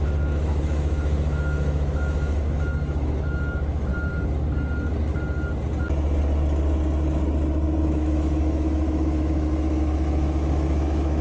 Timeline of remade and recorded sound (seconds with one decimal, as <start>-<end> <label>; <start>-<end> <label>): 0.0-3.9 remade; 3.9-7.8 recorded; 7.8-11.2 remade

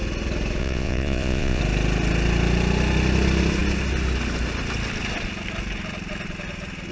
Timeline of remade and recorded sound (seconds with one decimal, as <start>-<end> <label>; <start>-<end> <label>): 0.0-0.6 recorded; 0.6-1.6 remade; 1.6-6.9 recorded

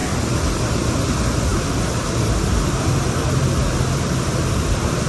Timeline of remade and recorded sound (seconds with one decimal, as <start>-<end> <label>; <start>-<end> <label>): 0.0-5.1 recorded

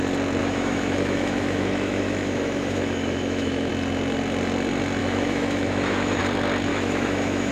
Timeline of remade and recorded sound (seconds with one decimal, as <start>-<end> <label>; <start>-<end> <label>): 0.0-0.4 recorded; 0.4-3.7 remade; 3.7-5.0 recorded; 5.0-6.2 remade; 6.2-6.7 recorded; 6.7-7.5 remade